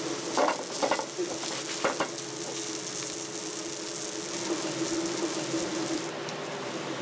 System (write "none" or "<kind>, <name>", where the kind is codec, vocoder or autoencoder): none